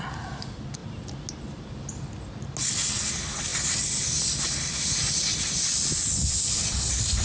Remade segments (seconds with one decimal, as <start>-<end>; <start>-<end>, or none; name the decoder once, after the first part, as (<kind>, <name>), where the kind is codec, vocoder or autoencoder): 3.5-7.2 (vocoder, BigVGAN v2)